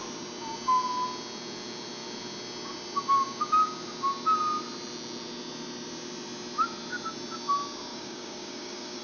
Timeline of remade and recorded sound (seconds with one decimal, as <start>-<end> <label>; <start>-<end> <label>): 0.0-7.9 recorded; 7.9-9.0 remade